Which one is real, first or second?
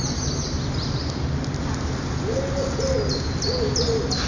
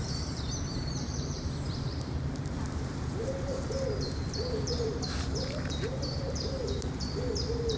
first